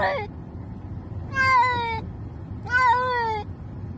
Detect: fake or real real